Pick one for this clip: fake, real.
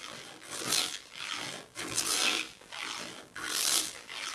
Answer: fake